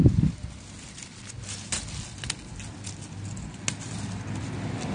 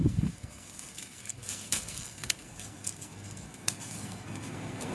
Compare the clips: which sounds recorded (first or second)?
first